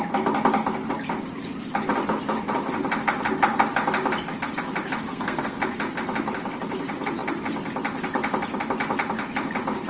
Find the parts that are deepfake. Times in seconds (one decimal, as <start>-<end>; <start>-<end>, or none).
5.1-5.6